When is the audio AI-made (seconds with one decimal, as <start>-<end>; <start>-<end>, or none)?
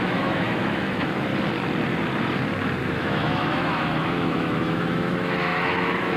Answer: 0.0-1.3; 2.8-6.2